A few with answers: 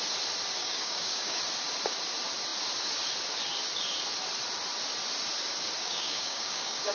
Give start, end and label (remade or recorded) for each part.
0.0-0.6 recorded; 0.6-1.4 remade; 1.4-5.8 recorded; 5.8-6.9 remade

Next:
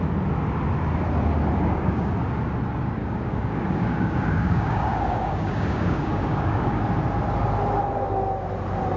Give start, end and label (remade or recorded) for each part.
0.0-1.6 recorded; 1.6-2.1 remade; 2.1-3.0 recorded; 3.0-6.8 remade; 6.8-9.0 recorded